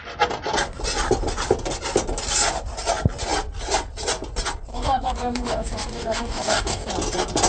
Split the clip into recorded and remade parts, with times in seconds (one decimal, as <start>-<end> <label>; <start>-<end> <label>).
0.0-4.7 recorded; 4.7-6.9 remade; 6.9-7.5 recorded